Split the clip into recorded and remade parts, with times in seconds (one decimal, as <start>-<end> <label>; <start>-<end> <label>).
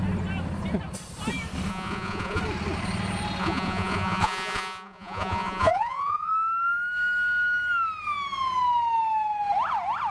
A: 0.0-1.7 recorded; 1.7-2.4 remade; 2.4-3.4 recorded; 3.4-6.3 remade; 6.3-10.1 recorded